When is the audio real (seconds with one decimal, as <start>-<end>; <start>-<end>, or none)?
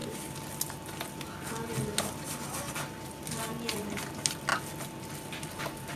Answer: 0.0-6.0